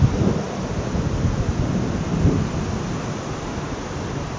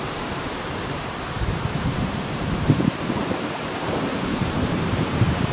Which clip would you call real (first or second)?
first